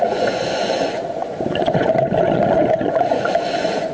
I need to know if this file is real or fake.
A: fake